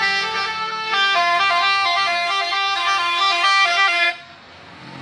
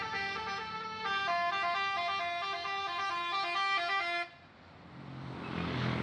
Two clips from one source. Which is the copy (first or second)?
first